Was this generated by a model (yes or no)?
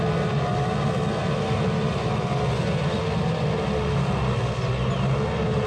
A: no